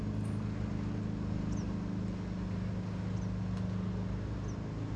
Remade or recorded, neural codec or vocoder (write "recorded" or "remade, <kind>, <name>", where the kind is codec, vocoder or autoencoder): recorded